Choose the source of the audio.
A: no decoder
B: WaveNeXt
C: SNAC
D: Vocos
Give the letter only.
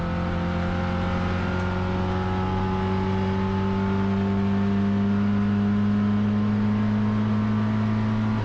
A